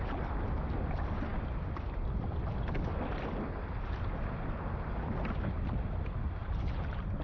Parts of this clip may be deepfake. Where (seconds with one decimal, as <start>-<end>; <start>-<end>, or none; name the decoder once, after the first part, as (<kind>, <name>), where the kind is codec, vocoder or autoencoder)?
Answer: 6.4-7.2 (vocoder, BigVGAN v2)